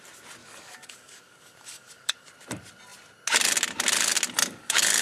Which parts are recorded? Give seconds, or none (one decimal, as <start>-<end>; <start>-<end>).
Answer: 0.0-0.4; 2.3-4.4